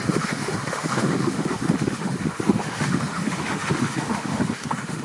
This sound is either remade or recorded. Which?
remade